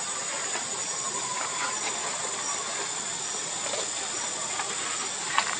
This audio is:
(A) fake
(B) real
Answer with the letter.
B